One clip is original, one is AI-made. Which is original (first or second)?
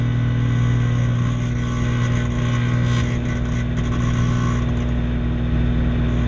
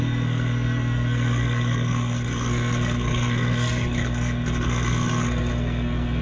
first